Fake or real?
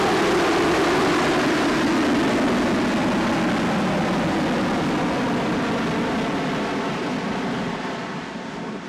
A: real